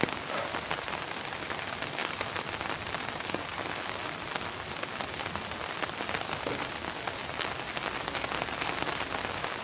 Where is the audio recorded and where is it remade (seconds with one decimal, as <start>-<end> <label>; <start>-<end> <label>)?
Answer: 0.0-9.6 recorded